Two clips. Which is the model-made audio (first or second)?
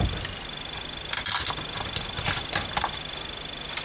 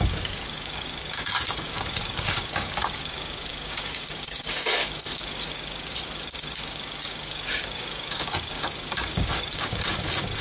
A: second